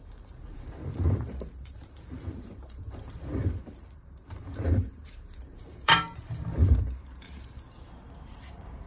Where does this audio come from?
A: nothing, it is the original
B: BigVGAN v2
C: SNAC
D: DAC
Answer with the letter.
B